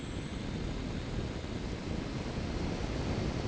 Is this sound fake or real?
real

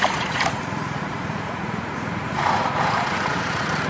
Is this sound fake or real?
fake